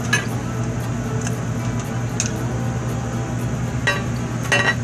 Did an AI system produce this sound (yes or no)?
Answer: no